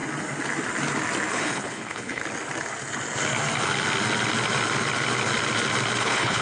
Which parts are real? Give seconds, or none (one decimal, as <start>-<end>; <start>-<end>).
0.0-1.3; 2.2-6.0